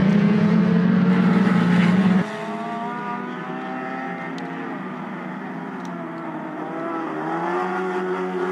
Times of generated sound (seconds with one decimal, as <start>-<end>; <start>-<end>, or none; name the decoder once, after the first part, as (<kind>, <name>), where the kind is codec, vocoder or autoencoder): 0.0-0.6 (vocoder, Vocos)